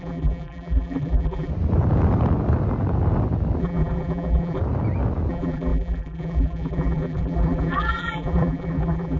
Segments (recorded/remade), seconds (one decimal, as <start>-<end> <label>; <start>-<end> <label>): 0.0-1.5 remade; 1.5-3.6 recorded; 3.6-4.6 remade; 4.6-5.3 recorded; 5.3-9.2 remade